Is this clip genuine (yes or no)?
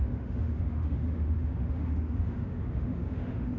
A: no